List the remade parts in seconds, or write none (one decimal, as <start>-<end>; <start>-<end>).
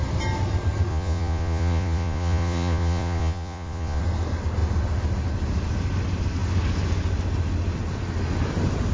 0.9-4.0